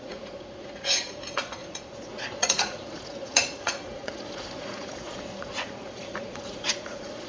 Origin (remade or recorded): remade